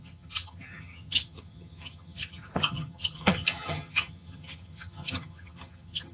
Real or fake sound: fake